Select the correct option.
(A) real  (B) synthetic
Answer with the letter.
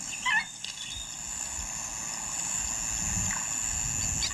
A